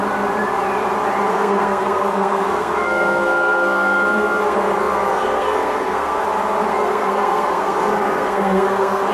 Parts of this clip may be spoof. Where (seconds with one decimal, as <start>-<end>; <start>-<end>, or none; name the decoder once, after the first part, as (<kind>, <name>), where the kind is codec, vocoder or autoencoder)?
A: 1.3-6.2 (codec, SNAC); 6.7-9.1